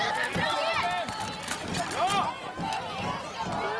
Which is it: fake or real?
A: real